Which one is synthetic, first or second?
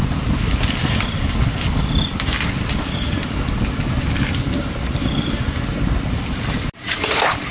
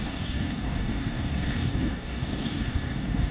second